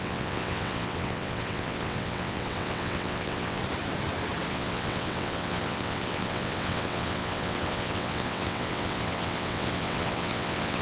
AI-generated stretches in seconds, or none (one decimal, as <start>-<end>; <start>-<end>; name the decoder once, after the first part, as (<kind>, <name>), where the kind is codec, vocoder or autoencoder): 0.0-3.6 (vocoder, WaveNeXt); 4.5-10.8